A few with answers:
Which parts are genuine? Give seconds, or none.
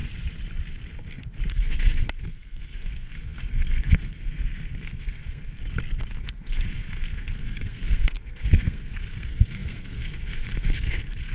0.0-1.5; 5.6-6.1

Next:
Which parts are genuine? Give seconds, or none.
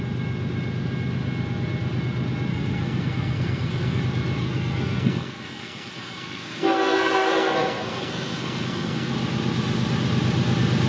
0.0-2.5; 4.0-4.4; 9.1-10.9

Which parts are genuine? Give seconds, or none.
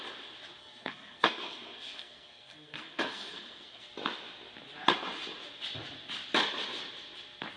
0.0-0.6; 3.9-7.6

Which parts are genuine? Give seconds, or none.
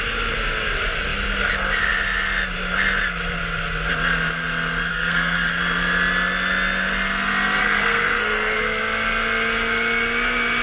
0.0-4.9; 5.5-7.6; 8.8-10.6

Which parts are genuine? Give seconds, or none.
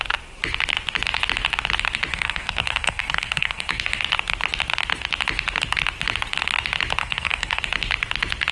0.0-2.1; 3.8-7.0; 7.6-8.5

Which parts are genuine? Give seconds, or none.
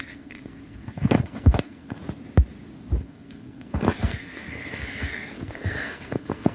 2.0-3.0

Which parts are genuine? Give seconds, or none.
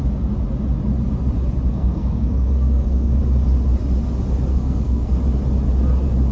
0.0-1.7; 3.2-4.5; 5.2-6.3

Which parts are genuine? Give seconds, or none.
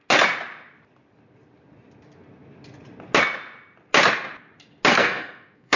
0.0-4.9